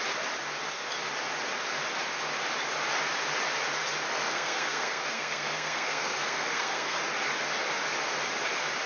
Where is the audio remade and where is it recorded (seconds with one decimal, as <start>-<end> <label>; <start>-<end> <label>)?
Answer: 0.0-4.1 recorded; 4.1-7.0 remade; 7.0-8.9 recorded